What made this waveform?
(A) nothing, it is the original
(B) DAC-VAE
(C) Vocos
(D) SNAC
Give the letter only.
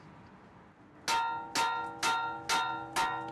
A